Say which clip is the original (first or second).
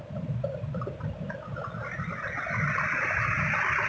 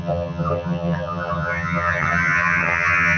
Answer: first